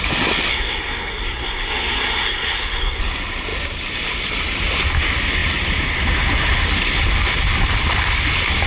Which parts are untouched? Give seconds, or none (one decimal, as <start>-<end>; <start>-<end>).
0.0-0.5; 3.0-8.7